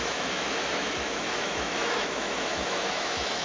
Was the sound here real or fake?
fake